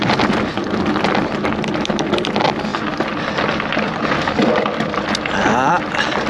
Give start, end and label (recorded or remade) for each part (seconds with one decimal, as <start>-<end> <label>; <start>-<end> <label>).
0.0-6.3 recorded